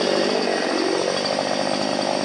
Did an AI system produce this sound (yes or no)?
no